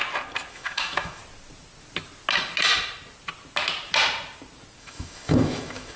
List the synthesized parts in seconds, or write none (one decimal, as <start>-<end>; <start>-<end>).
0.5-1.2; 4.8-6.0